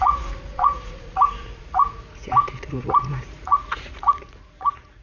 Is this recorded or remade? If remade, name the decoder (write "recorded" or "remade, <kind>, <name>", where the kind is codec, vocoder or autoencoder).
remade, vocoder, Vocos